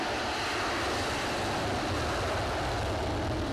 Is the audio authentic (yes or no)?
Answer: yes